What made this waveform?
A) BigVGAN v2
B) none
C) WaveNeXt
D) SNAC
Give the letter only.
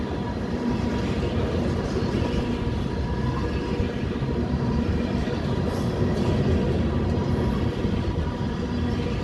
B